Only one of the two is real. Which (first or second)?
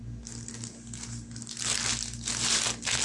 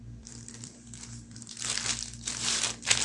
first